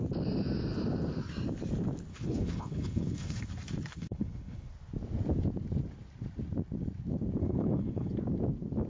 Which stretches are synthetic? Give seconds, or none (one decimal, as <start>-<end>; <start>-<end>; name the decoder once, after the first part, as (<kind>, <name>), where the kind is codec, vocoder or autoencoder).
2.1-3.4 (codec, HILCodec); 3.9-4.7; 7.4-8.1